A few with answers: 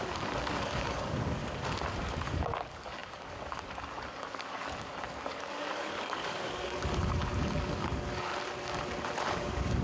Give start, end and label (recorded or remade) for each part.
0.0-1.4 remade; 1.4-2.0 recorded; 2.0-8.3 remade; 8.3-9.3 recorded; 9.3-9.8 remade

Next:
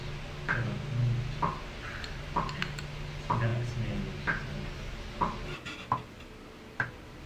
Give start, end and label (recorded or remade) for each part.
0.0-7.3 recorded

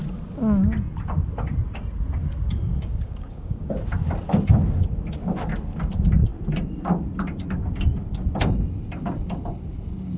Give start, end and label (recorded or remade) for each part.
0.0-2.2 recorded; 2.2-3.6 remade; 3.6-10.2 recorded

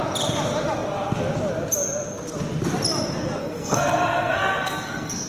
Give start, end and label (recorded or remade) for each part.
0.0-3.4 recorded; 3.4-5.3 remade

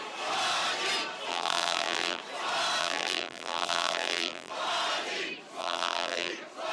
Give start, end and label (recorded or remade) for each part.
0.0-1.3 recorded; 1.3-2.2 remade; 2.2-2.8 recorded; 2.8-4.5 remade; 4.5-5.6 recorded; 5.6-6.3 remade; 6.3-6.7 recorded

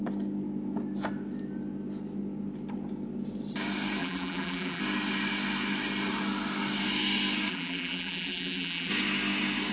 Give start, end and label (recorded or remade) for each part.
0.0-4.0 recorded; 4.0-4.8 remade; 4.8-7.5 recorded; 7.5-8.9 remade; 8.9-9.7 recorded

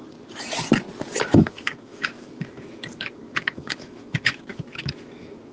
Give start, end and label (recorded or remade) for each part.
0.0-1.2 recorded; 1.2-5.5 remade

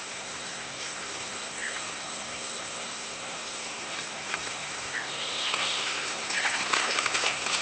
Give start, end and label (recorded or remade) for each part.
0.0-7.6 remade